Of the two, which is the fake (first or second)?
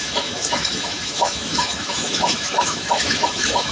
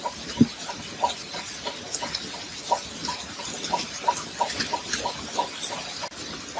first